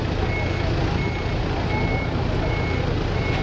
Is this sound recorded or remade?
recorded